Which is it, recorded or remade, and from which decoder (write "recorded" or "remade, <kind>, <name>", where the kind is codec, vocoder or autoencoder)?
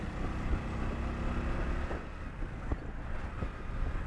recorded